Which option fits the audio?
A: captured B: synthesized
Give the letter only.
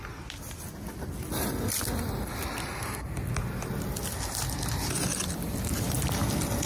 A